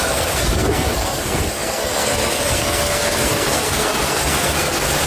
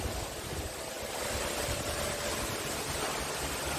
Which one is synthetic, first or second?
first